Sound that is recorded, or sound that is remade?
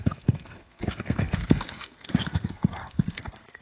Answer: remade